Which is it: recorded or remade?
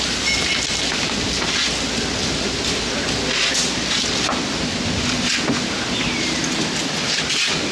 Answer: recorded